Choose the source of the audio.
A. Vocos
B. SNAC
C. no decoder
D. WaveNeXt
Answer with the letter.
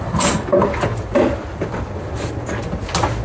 C